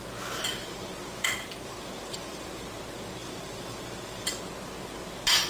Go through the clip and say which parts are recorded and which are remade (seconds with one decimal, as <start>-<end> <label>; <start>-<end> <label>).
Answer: 0.0-0.6 recorded; 0.6-2.6 remade; 2.6-3.2 recorded; 3.2-4.4 remade; 4.4-5.5 recorded